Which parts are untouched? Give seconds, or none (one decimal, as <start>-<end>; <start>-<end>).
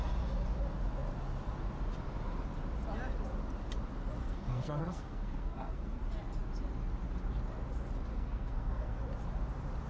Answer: 0.0-4.2; 6.0-8.1; 9.0-9.9